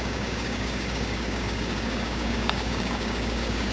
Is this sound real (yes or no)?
no